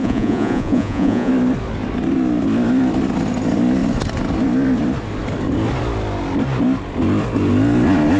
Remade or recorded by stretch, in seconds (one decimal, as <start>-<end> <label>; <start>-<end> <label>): 0.0-1.3 remade; 1.3-8.2 recorded